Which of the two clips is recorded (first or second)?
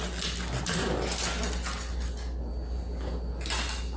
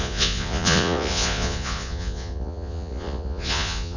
first